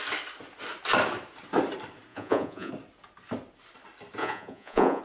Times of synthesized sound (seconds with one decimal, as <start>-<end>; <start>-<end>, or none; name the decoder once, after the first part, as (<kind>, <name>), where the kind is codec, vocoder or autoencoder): 2.1-2.7 (vocoder, Vocos); 4.2-5.0